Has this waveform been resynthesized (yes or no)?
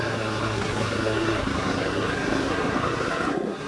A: yes